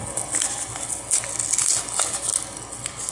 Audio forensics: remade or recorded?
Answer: recorded